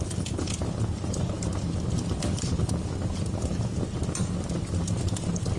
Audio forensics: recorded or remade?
remade